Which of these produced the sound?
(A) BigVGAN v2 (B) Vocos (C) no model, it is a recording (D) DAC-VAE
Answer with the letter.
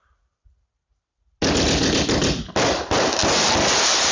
C